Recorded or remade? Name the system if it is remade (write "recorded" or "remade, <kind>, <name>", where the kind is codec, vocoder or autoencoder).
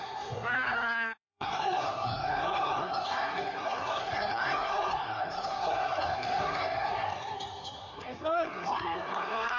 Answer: remade, codec, SNAC